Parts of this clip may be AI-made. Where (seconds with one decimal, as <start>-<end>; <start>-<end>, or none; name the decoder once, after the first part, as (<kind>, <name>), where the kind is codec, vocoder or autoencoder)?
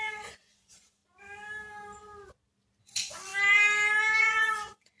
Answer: 0.0-1.0 (vocoder, Vocos); 2.8-3.3; 4.2-5.0